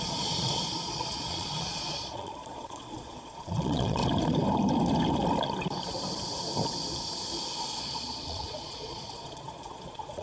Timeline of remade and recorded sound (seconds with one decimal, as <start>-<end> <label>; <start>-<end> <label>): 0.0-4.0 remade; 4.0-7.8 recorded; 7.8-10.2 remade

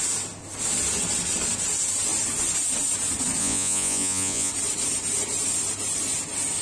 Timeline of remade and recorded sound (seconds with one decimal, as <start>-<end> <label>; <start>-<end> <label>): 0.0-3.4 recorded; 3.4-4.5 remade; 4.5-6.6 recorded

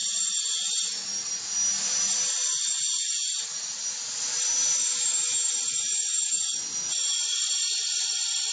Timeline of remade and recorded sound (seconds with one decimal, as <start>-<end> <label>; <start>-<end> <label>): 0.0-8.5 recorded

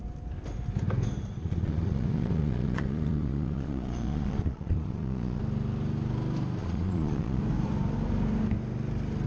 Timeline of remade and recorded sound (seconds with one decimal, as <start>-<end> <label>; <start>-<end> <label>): 0.0-1.4 recorded; 1.4-5.4 remade; 5.4-6.6 recorded; 6.6-7.4 remade; 7.4-9.3 recorded